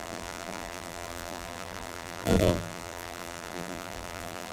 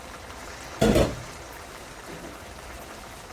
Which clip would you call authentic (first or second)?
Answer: second